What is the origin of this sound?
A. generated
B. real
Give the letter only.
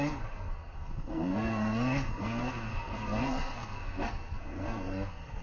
A